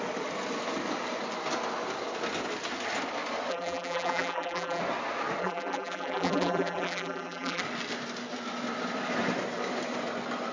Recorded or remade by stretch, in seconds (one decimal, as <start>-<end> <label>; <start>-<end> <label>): 0.0-3.5 recorded; 3.5-4.8 remade; 4.8-5.4 recorded; 5.4-7.6 remade; 7.6-10.5 recorded